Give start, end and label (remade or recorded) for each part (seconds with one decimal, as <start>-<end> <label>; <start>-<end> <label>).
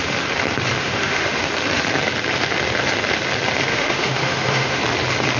0.0-0.8 recorded; 0.8-1.4 remade; 1.4-3.7 recorded; 3.7-4.8 remade; 4.8-5.4 recorded